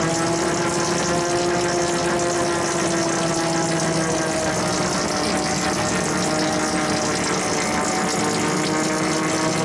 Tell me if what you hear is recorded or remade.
recorded